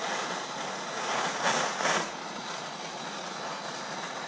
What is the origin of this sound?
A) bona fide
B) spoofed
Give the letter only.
B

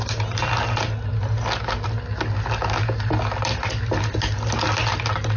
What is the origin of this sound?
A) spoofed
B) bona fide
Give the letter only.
B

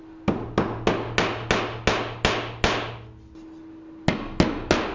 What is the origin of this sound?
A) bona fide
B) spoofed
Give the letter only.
A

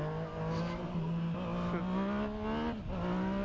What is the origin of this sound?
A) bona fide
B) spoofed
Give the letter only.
A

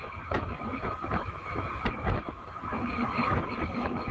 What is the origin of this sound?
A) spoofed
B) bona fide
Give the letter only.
A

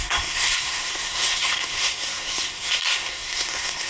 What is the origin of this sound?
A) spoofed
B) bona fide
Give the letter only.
A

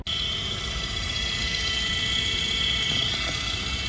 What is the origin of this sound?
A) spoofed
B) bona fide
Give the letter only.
B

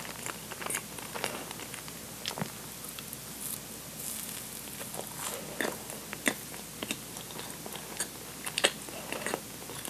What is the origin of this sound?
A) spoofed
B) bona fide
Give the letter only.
B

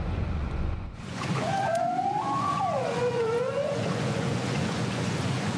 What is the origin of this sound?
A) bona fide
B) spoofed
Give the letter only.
B